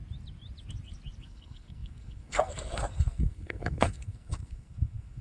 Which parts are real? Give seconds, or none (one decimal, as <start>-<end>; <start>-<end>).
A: 0.0-1.2